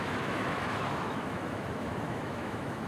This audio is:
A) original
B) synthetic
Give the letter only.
B